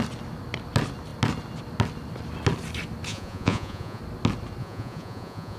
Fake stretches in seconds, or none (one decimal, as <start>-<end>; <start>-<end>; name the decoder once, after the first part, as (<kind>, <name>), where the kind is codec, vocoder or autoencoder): 3.1-4.0 (vocoder, Vocos); 4.6-5.6